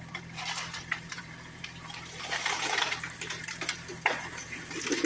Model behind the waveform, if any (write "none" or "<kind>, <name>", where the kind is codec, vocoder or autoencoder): vocoder, BigVGAN v2